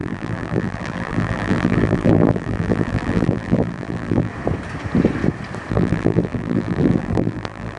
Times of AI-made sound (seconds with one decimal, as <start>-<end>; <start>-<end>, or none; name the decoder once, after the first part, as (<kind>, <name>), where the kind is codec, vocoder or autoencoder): 0.0-4.3 (vocoder, BigVGAN v2); 5.7-7.8